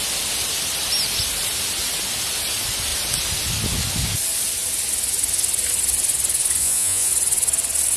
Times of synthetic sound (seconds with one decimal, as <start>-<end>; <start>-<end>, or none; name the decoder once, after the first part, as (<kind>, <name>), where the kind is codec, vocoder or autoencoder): 6.6-7.1 (vocoder, Vocos)